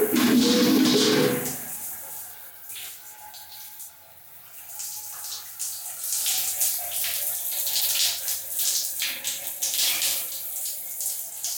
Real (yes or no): yes